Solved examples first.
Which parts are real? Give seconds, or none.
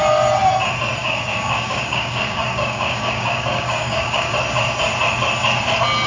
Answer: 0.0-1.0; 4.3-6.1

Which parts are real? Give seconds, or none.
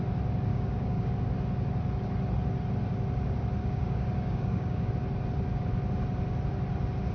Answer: 0.0-0.5; 1.1-3.6; 4.9-7.1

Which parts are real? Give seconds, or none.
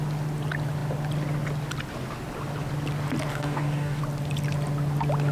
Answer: 0.0-3.3; 4.0-5.3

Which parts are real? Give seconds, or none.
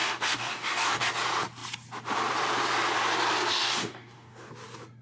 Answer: 1.1-3.5; 4.5-5.0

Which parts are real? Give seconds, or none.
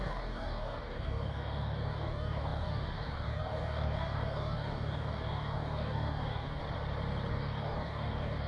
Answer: 6.6-7.3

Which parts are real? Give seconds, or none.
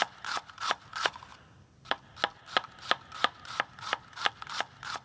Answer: 0.0-5.0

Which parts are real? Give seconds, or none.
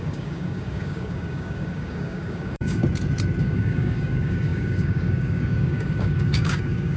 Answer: 2.8-3.4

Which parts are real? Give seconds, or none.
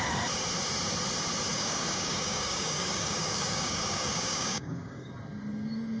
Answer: 0.0-1.5; 5.1-6.0